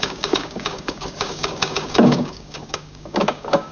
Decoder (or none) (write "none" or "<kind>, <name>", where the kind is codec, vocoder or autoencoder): codec, DAC